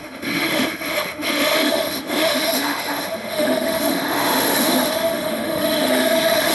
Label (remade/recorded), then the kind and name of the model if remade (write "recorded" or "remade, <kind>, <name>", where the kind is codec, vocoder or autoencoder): remade, autoencoder, DAC-VAE